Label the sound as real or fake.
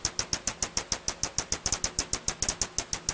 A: real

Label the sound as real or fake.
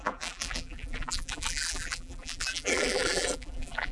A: fake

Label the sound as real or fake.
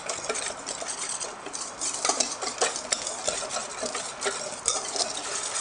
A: real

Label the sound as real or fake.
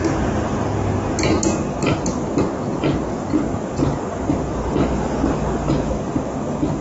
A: real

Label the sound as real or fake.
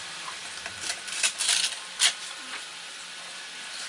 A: fake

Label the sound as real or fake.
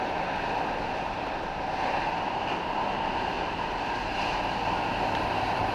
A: real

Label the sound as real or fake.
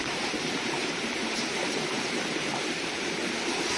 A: fake